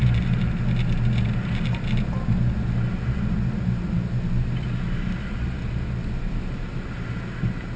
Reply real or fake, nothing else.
real